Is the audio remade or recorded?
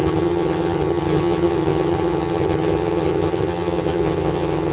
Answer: remade